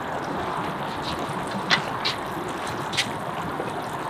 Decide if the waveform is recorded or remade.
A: recorded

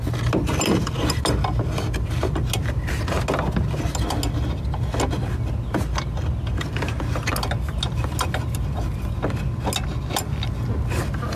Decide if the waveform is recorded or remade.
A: recorded